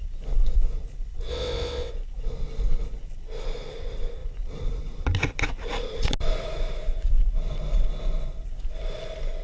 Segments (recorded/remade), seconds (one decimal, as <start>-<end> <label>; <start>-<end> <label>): 0.0-1.3 recorded; 1.3-1.9 remade; 1.9-9.4 recorded

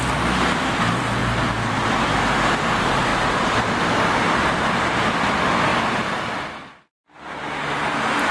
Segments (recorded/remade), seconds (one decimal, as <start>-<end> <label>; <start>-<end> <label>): 0.0-8.3 recorded